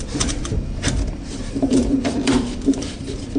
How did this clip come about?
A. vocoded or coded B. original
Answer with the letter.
A